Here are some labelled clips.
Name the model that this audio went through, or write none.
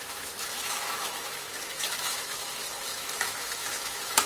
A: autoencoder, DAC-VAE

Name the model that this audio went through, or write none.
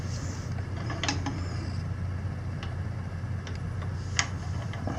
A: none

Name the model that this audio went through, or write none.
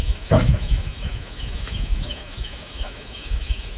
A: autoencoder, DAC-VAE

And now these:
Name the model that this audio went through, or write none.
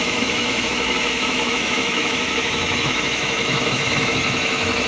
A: autoencoder, DAC-VAE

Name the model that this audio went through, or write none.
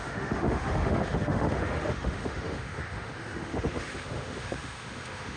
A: autoencoder, DAC-VAE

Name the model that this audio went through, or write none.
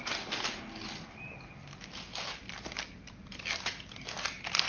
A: none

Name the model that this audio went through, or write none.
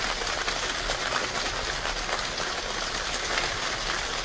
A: none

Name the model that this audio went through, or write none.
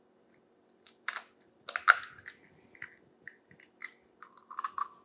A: none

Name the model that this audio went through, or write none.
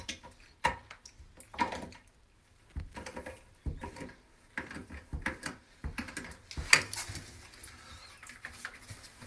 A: none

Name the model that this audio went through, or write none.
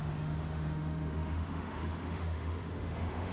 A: autoencoder, DAC-VAE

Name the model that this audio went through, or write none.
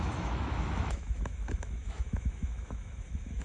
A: autoencoder, DAC-VAE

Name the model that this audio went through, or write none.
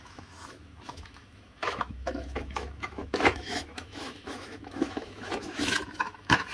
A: autoencoder, DAC-VAE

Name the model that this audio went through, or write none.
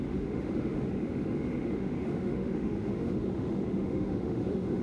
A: autoencoder, DAC-VAE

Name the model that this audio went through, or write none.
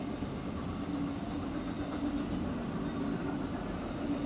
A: none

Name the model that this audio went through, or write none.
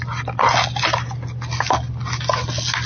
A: none